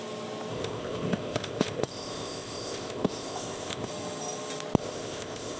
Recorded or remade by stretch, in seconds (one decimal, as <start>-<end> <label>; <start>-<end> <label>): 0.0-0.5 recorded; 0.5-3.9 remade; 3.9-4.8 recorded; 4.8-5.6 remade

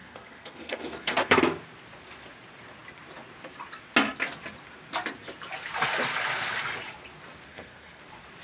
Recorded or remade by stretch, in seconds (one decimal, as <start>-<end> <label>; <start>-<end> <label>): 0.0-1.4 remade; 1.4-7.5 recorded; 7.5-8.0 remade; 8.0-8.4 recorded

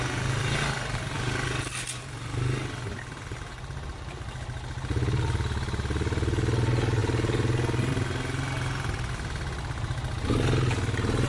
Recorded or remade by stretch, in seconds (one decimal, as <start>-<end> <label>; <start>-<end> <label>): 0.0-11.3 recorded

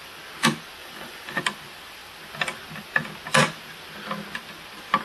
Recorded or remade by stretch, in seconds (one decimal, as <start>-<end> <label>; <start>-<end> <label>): 0.0-0.8 recorded; 0.8-1.4 remade; 1.4-5.0 recorded

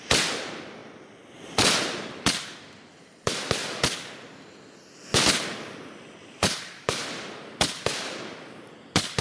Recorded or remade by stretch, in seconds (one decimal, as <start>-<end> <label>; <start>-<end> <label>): 0.0-3.6 remade; 3.6-6.6 recorded; 6.6-9.2 remade